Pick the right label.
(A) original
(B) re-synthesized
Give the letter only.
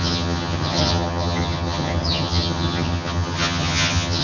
B